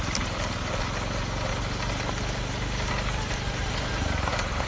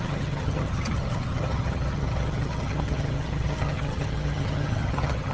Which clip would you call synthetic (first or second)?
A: second